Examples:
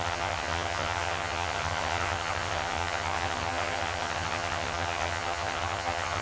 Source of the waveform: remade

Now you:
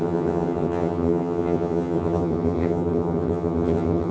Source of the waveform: remade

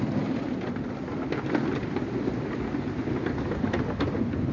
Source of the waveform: recorded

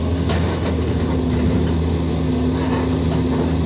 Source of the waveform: recorded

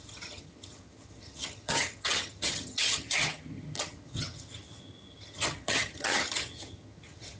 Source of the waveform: remade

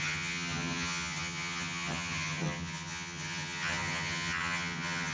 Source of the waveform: remade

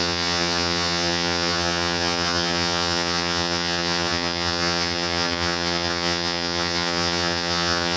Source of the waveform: remade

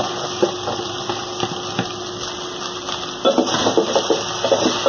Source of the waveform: recorded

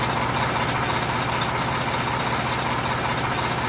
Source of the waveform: recorded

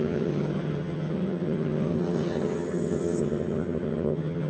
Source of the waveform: remade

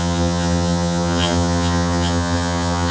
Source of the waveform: remade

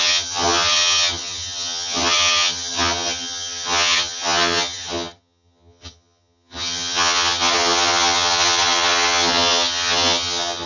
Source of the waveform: remade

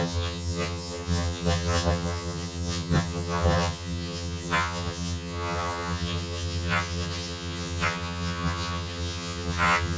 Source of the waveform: remade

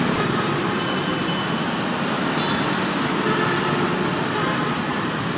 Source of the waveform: recorded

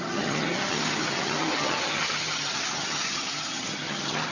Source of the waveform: remade